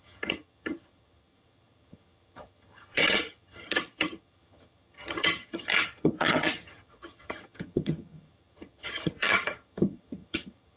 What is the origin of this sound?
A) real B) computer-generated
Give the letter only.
B